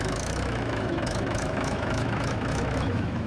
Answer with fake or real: fake